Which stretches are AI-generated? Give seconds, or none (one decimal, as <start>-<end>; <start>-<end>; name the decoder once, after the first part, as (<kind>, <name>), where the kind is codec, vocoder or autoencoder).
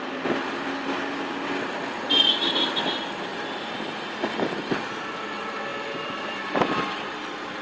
none